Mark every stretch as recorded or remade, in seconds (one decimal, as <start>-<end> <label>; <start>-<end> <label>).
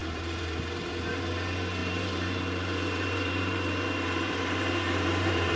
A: 0.0-0.9 remade; 0.9-1.8 recorded; 1.8-5.6 remade